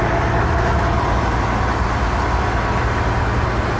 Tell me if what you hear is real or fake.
real